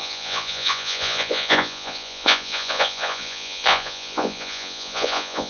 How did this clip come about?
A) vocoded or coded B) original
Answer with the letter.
A